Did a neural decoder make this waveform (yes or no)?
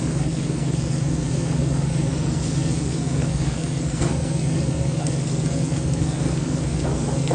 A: yes